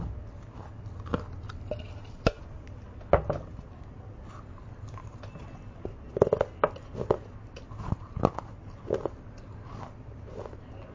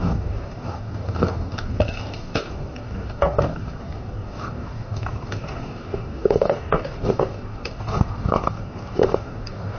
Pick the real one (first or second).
first